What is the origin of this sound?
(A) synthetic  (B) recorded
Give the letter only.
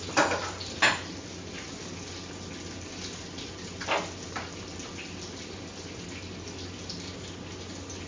B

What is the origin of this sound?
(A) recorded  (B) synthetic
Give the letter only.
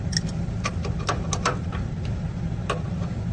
A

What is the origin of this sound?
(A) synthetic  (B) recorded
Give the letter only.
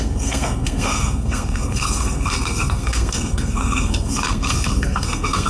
A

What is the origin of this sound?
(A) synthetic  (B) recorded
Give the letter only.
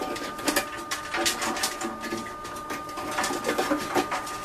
B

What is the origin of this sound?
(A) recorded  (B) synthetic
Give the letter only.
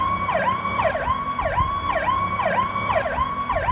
A